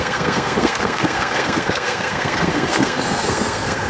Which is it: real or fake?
fake